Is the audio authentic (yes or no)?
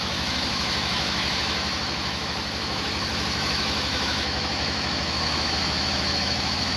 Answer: no